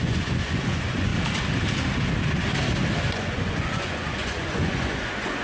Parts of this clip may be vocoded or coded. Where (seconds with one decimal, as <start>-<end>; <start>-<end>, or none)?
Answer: 0.0-1.1; 3.1-5.4